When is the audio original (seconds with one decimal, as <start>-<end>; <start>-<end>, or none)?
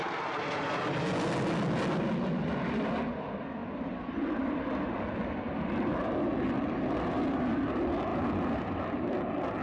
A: 0.0-3.6; 7.2-9.6